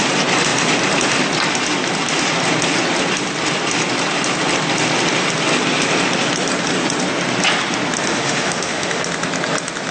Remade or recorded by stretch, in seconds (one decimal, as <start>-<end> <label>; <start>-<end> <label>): 0.0-8.1 recorded; 8.1-9.0 remade; 9.0-9.9 recorded